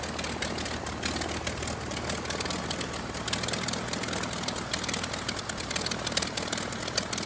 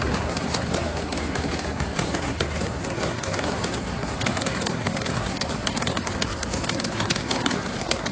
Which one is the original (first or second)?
first